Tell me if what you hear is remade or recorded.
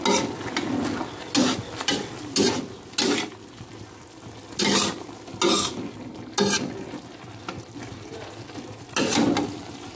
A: recorded